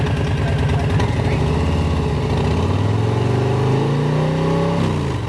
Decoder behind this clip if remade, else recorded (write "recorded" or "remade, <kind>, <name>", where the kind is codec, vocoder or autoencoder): recorded